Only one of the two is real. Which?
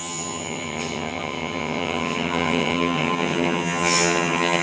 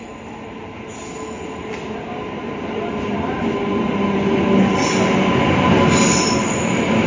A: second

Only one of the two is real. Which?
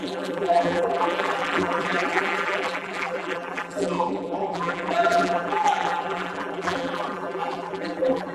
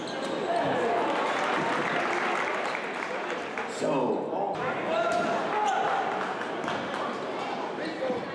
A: second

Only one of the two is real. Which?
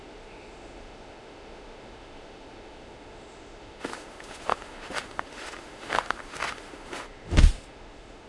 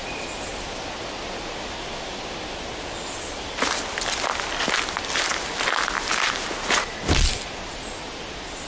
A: second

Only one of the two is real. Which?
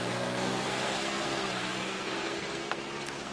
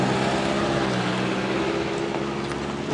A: second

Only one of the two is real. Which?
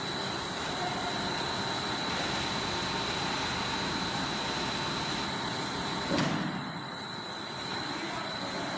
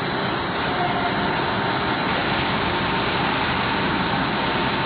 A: second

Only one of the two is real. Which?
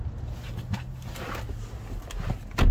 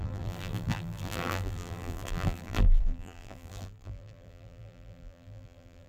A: first